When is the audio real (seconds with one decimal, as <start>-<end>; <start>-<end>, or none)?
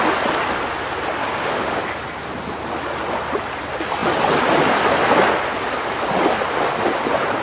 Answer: 0.0-1.2; 1.8-7.4